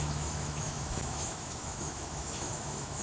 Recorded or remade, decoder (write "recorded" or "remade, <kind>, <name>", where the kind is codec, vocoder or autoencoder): remade, autoencoder, DAC-VAE